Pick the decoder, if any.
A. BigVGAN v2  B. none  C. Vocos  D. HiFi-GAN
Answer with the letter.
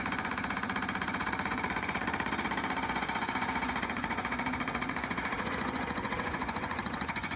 C